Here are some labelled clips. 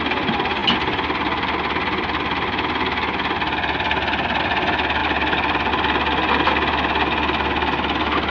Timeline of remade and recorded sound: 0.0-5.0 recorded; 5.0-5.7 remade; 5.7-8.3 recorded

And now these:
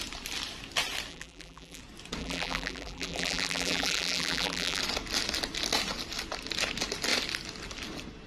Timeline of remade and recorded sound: 0.0-1.1 recorded; 1.1-1.8 remade; 1.8-2.2 recorded; 2.2-4.8 remade; 4.8-8.3 recorded

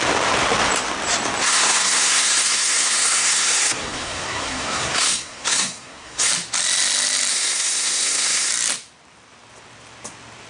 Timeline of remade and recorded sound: 0.0-1.4 recorded; 1.4-6.3 remade; 6.3-7.3 recorded; 7.3-8.5 remade; 8.5-10.5 recorded

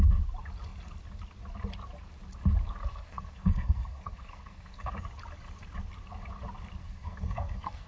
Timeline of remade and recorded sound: 0.0-2.9 recorded; 2.9-4.9 remade; 4.9-6.8 recorded; 6.8-7.9 remade

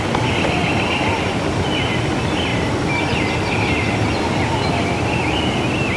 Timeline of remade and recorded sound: 0.0-6.0 recorded

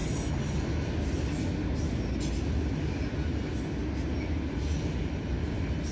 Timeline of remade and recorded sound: 0.0-5.9 recorded